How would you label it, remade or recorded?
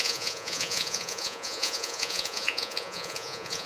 remade